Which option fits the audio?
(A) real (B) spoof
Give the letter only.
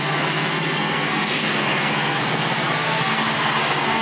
B